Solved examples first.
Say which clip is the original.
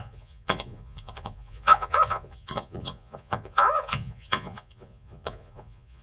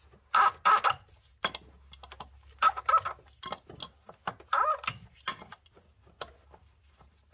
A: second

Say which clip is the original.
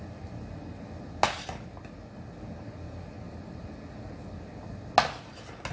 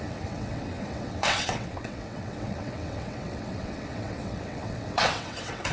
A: first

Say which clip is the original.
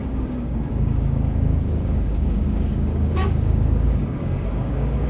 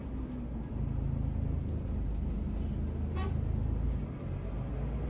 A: second